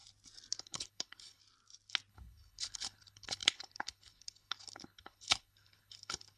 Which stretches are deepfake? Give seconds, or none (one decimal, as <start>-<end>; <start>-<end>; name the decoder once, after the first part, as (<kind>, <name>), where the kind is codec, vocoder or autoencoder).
0.6-1.4 (codec, HILCodec); 2.1-6.4